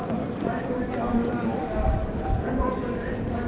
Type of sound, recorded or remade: recorded